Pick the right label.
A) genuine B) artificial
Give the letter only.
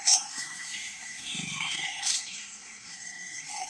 B